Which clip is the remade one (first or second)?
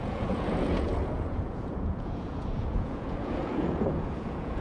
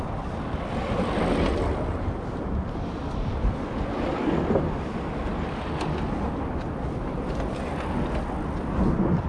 first